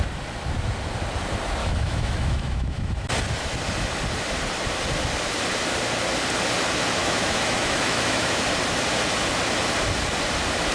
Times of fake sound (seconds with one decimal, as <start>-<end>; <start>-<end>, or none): 1.6-3.1; 7.0-8.4